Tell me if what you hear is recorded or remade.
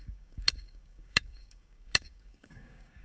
remade